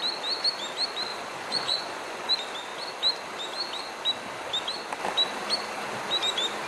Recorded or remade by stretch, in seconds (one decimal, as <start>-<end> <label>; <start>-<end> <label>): 0.0-1.1 recorded; 1.1-2.3 remade; 2.3-6.7 recorded